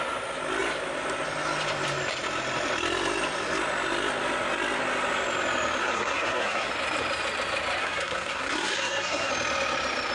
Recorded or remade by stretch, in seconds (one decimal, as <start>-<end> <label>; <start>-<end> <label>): 0.0-5.8 recorded; 5.8-6.7 remade; 6.7-7.8 recorded; 7.8-9.3 remade; 9.3-10.1 recorded